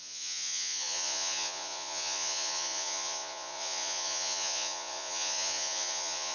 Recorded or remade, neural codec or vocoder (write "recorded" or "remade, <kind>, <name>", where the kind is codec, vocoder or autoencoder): remade, vocoder, Vocos